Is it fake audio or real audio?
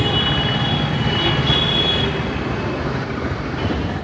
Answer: real